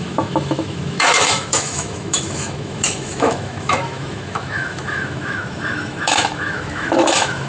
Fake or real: fake